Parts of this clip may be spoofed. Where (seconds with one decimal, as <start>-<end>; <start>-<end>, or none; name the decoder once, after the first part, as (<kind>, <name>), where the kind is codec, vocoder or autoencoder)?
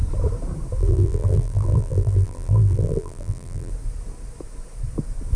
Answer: 0.8-3.7 (vocoder, BigVGAN v2)